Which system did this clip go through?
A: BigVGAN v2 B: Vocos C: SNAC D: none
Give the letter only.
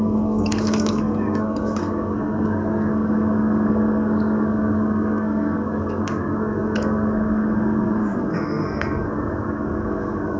C